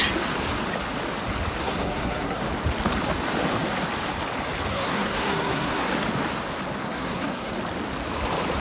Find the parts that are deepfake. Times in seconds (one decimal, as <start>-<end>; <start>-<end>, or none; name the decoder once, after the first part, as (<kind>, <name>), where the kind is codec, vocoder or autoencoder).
1.6-2.4 (codec, SNAC); 4.7-5.9; 6.8-7.5